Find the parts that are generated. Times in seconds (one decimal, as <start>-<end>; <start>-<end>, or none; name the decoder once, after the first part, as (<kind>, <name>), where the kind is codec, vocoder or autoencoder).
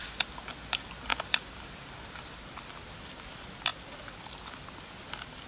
none